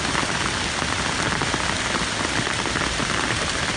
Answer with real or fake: real